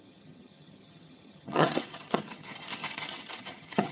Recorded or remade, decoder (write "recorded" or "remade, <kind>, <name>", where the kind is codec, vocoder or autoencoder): remade, vocoder, HiFi-GAN